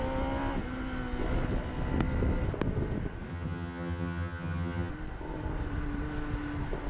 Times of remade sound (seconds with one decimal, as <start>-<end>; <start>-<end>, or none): 3.3-4.9